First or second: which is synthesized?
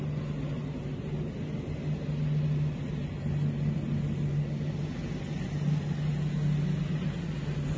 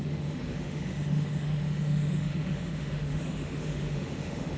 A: second